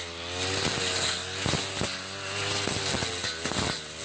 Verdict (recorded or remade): recorded